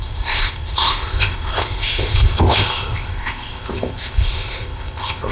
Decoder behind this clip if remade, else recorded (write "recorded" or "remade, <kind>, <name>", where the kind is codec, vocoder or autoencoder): remade, codec, ZipCodec